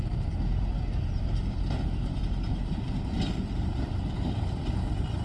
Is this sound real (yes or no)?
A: no